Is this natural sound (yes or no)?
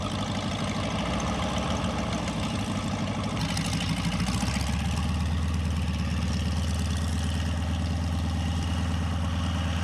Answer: yes